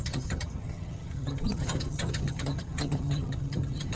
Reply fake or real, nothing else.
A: fake